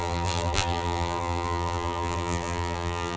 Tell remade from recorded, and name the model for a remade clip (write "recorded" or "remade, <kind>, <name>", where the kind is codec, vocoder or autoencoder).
remade, vocoder, BigVGAN v2